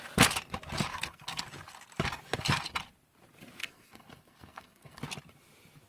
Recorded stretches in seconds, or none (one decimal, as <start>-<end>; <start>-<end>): 0.0-0.9; 1.4-3.6; 5.0-5.9